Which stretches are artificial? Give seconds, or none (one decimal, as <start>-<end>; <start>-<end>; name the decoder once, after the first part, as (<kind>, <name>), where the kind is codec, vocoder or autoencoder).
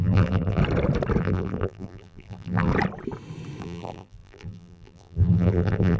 0.0-0.6 (vocoder, BigVGAN v2); 1.2-2.7; 3.6-6.0